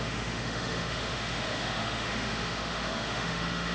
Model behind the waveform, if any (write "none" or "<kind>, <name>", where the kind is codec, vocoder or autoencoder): autoencoder, DAC-VAE